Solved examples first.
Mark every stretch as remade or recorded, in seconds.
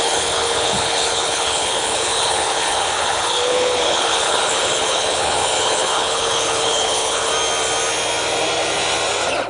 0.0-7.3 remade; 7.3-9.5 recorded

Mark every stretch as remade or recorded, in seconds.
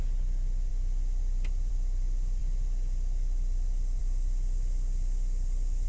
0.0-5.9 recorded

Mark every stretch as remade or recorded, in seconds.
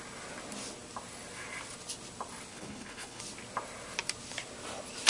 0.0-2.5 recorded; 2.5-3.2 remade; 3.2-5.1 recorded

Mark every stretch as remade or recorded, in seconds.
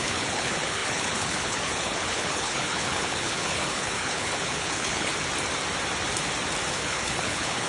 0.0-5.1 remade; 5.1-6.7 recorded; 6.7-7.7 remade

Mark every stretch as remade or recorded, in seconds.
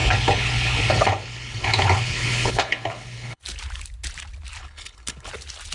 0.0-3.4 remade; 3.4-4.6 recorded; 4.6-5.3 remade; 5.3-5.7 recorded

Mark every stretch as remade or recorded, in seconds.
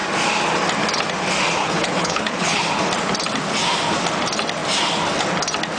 0.0-1.6 recorded; 1.6-2.6 remade; 2.6-5.8 recorded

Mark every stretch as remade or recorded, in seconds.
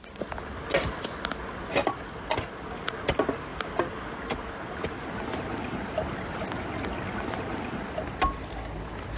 0.0-9.2 recorded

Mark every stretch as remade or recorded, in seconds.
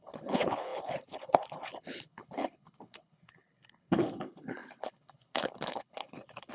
0.0-6.5 remade